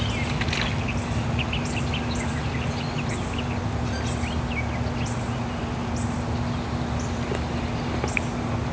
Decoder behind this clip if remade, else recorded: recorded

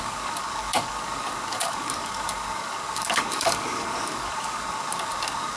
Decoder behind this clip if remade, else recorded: remade, codec, DAC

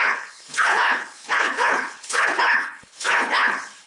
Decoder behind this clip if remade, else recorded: remade, codec, HILCodec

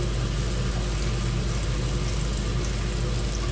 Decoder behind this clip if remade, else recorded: recorded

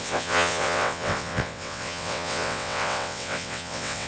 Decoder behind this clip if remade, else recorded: remade, vocoder, WaveNeXt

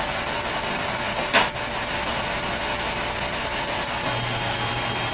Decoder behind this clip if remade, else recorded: recorded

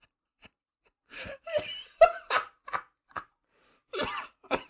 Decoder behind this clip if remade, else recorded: remade, vocoder, BigVGAN v2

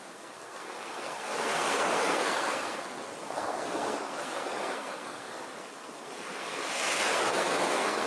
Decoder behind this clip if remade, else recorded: remade, codec, SNAC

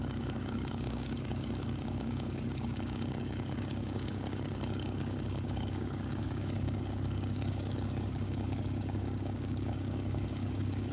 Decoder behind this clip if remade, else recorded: remade, codec, DAC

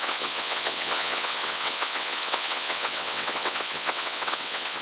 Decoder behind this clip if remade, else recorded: remade, vocoder, WaveNeXt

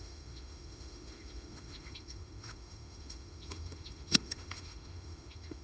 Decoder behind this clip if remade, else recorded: remade, autoencoder, DAC-VAE